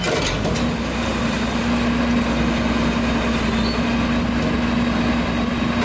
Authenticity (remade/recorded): recorded